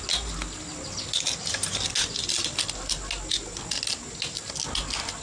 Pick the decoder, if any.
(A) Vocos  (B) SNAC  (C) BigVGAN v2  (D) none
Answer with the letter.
D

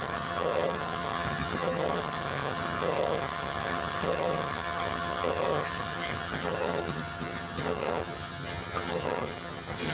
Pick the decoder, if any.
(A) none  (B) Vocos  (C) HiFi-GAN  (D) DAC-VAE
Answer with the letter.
C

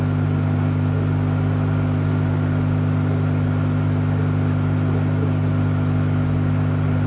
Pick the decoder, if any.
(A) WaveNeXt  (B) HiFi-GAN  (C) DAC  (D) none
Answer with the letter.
D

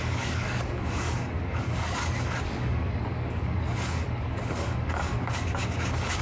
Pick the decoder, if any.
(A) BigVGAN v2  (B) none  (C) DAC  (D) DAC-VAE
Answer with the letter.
C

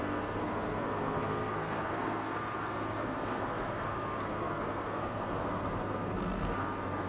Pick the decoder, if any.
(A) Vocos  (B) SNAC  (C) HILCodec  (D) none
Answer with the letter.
B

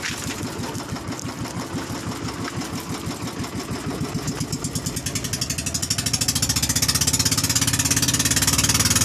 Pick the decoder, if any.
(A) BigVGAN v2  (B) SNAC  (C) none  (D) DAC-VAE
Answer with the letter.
C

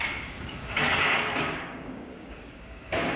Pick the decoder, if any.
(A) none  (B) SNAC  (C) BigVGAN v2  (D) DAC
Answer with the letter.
D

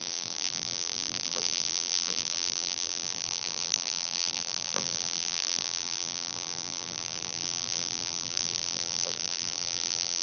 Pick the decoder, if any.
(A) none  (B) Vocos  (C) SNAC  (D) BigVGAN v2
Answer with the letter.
D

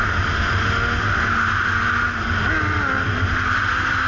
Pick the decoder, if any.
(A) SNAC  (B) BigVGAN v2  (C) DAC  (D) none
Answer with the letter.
D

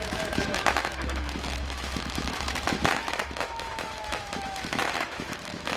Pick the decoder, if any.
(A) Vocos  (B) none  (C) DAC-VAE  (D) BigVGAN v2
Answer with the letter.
C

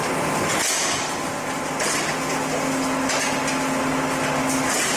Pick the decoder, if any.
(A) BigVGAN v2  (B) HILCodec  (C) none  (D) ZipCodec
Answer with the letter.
C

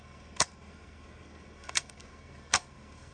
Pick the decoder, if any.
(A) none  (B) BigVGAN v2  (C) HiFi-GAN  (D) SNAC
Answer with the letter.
D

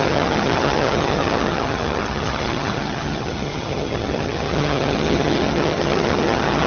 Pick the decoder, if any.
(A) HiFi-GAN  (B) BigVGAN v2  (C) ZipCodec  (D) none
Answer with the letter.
A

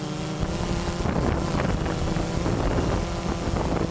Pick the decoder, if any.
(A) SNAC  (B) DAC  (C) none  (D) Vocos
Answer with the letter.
C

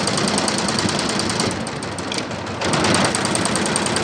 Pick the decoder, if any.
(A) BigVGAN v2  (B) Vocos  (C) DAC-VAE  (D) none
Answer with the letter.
D